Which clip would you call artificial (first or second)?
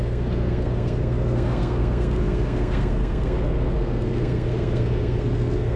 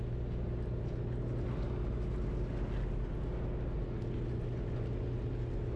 first